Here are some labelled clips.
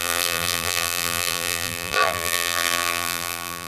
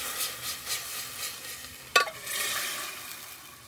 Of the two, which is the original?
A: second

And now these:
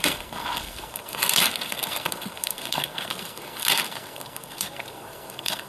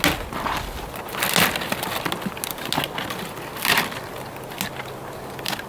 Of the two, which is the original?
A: second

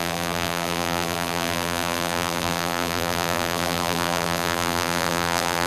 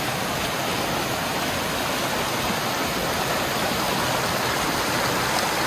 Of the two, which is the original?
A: second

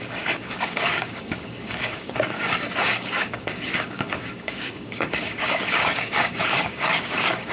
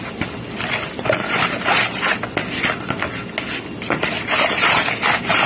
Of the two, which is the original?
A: second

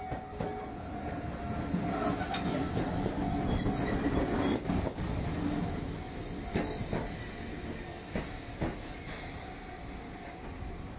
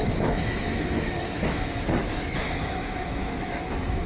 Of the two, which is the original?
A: first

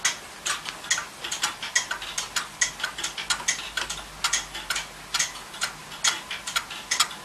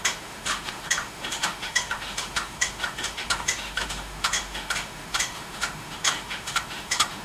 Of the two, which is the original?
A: first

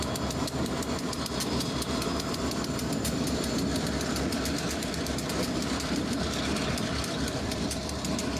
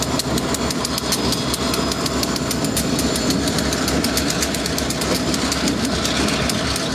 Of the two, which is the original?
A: second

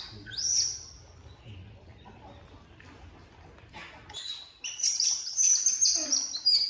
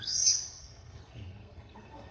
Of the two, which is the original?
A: first